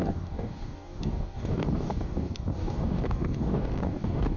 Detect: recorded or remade remade